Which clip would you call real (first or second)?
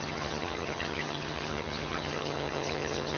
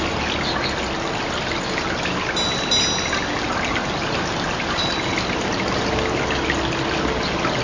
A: second